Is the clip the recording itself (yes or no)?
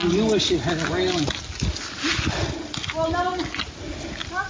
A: yes